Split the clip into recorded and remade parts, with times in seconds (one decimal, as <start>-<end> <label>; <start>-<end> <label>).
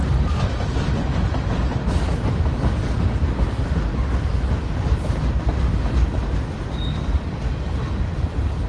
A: 0.0-8.7 recorded